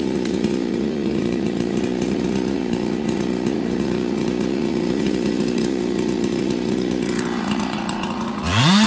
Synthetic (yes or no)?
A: yes